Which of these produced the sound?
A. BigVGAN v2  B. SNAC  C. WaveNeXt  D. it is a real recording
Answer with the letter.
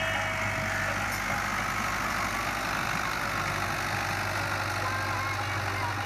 D